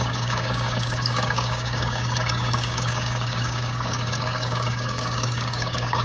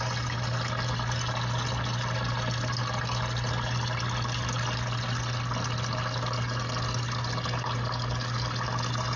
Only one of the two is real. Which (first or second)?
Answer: second